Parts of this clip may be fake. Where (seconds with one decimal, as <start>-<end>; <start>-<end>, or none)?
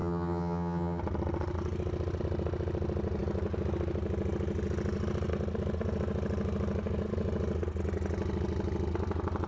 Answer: 0.0-1.0